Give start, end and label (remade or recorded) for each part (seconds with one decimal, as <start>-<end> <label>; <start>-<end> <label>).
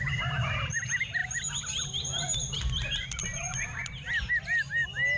0.0-5.2 recorded